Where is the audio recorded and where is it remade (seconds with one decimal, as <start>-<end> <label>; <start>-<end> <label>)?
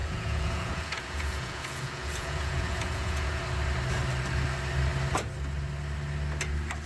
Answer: 0.0-3.4 remade; 3.4-6.9 recorded